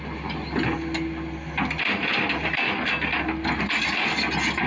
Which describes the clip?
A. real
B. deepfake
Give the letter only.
A